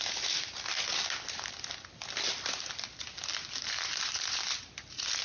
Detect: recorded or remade recorded